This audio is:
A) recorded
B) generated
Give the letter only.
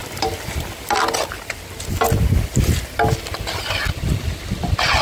A